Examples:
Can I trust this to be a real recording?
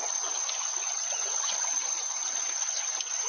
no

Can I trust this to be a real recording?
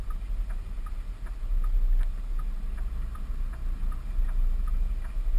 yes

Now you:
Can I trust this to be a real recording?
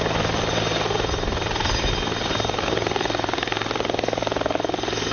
yes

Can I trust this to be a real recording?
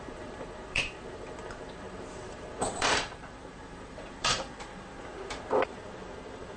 no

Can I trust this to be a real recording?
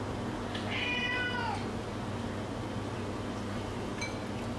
yes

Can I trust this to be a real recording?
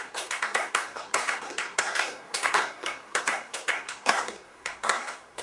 no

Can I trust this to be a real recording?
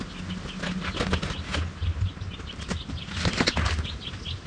yes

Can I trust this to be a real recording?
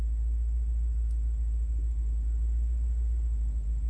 yes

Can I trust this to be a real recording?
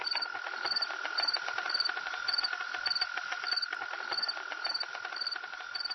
yes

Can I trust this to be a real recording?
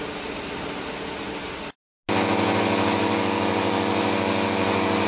yes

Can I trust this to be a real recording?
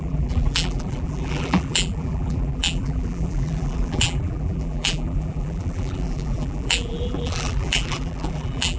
no